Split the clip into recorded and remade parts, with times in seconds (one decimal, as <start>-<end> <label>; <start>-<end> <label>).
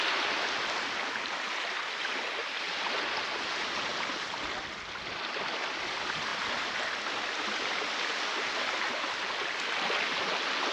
0.0-10.7 recorded